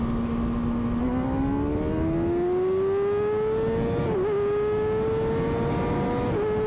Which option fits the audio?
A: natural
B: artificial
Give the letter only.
A